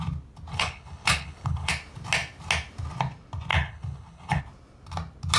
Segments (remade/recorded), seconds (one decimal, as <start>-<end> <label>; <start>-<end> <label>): 0.0-0.5 recorded; 0.5-1.7 remade; 1.7-3.5 recorded; 3.5-4.4 remade; 4.4-5.4 recorded